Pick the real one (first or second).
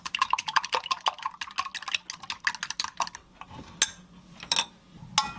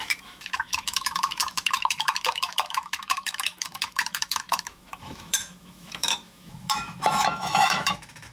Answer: first